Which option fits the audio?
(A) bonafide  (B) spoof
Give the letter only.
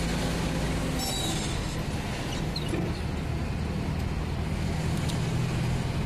A